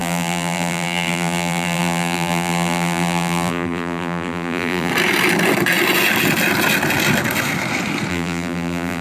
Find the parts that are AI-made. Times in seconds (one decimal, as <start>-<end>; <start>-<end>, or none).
0.0-4.9; 8.1-9.0